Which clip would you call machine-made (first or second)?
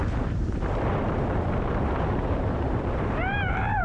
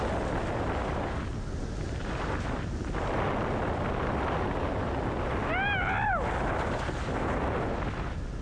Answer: first